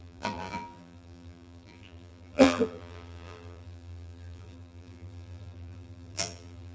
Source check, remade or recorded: remade